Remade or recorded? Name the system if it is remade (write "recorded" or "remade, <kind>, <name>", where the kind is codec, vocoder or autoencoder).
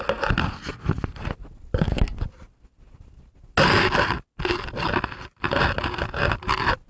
recorded